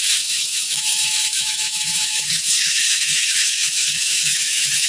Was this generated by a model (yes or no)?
yes